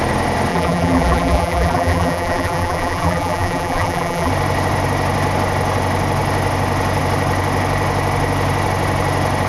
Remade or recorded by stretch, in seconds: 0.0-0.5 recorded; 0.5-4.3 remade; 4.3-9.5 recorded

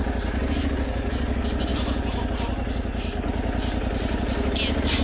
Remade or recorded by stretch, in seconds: 0.0-5.0 recorded

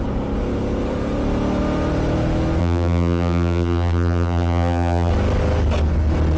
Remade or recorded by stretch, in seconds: 0.0-2.6 recorded; 2.6-5.1 remade; 5.1-6.4 recorded